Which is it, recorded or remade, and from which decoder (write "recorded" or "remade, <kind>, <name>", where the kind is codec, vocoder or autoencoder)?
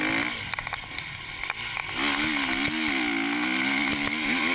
recorded